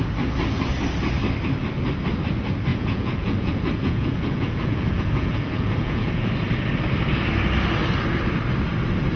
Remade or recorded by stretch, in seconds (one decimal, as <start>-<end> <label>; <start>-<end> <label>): 0.0-2.7 recorded; 2.7-6.3 remade; 6.3-9.2 recorded